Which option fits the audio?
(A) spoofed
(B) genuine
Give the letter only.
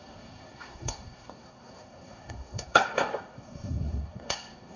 A